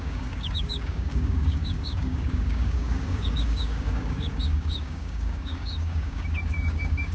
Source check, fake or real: fake